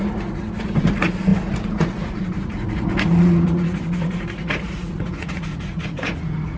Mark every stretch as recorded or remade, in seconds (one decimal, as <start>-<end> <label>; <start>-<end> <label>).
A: 0.0-6.6 remade